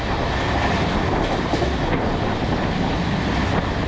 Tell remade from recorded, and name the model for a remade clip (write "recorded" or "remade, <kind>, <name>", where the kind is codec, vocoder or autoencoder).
recorded